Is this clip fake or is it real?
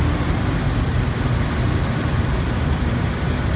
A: real